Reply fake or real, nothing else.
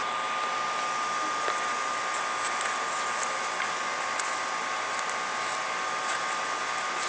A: real